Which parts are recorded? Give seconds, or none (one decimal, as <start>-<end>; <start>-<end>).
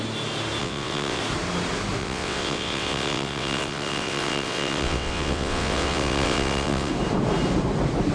0.0-0.6; 1.2-2.0; 6.9-8.1